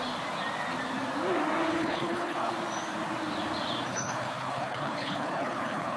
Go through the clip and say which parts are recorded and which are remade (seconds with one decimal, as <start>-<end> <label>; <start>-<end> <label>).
0.0-1.7 recorded; 1.7-2.5 remade; 2.5-3.9 recorded; 3.9-6.0 remade